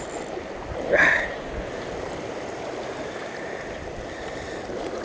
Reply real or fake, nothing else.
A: real